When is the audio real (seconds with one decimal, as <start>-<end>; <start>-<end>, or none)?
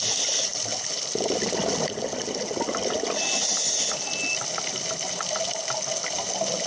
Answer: 0.0-6.7